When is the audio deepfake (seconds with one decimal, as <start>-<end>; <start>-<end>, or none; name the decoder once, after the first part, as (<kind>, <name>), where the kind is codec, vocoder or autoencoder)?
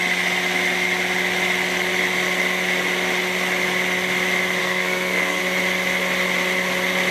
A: 4.6-5.4 (codec, SNAC)